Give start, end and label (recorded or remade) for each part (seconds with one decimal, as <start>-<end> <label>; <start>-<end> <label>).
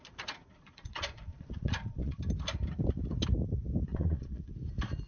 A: 0.0-0.4 recorded; 0.4-2.2 remade; 2.2-3.9 recorded; 3.9-4.5 remade; 4.5-5.1 recorded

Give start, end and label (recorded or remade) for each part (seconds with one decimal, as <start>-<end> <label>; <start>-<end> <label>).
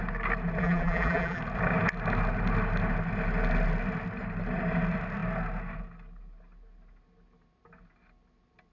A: 0.0-0.6 recorded; 0.6-1.4 remade; 1.4-8.7 recorded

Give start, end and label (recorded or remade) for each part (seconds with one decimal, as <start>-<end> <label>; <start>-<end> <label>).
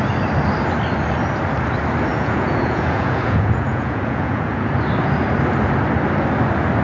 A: 0.0-2.1 recorded; 2.1-4.7 remade; 4.7-6.8 recorded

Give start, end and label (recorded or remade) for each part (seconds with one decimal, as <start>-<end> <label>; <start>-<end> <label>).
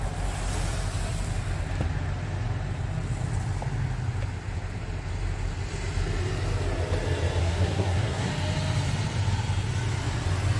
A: 0.0-7.4 recorded; 7.4-8.3 remade; 8.3-10.6 recorded